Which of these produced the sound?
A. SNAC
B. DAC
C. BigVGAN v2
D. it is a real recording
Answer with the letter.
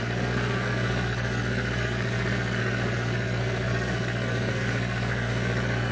A